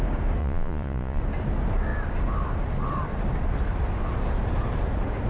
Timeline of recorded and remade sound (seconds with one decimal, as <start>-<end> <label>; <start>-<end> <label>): 0.0-0.4 recorded; 0.4-1.2 remade; 1.2-5.3 recorded